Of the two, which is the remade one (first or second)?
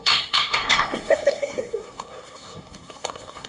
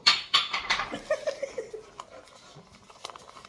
first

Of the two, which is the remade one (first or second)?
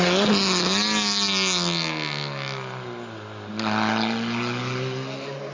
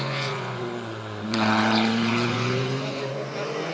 second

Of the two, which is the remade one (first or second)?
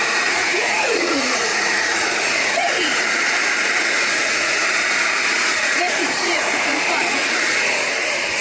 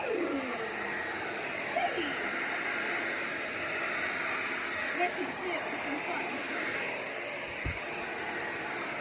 first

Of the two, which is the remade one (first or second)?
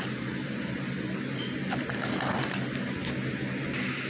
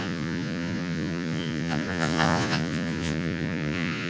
second